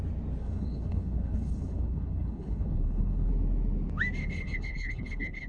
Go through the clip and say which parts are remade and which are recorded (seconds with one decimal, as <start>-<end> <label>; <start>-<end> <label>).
0.0-0.4 recorded; 0.4-3.3 remade; 3.3-4.2 recorded; 4.2-5.5 remade